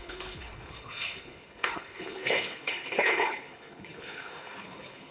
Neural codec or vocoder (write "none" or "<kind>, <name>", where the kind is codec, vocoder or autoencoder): codec, HILCodec